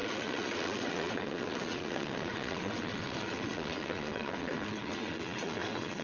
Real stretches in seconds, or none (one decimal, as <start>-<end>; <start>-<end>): none